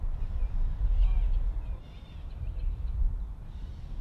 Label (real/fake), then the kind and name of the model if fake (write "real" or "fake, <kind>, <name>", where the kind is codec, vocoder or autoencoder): fake, vocoder, BigVGAN v2